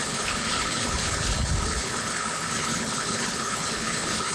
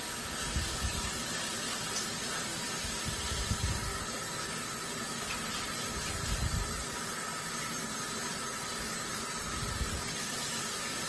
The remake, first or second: first